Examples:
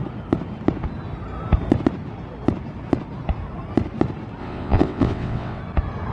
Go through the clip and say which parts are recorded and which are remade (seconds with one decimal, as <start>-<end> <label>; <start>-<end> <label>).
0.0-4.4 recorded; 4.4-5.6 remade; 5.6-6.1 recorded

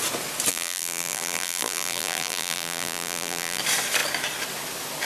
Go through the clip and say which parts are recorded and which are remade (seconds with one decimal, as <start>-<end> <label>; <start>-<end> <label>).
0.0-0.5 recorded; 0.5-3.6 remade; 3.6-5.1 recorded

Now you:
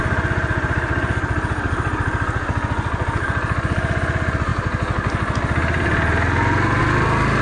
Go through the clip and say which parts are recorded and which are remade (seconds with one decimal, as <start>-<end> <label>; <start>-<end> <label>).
0.0-7.4 recorded

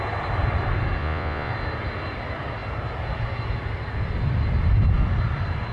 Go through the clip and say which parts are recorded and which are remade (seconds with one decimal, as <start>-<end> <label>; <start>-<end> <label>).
0.0-1.0 recorded; 1.0-1.5 remade; 1.5-5.7 recorded

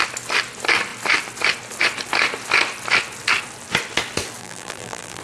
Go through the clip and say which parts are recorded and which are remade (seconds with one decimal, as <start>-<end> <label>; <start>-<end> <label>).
0.0-4.4 recorded; 4.4-5.2 remade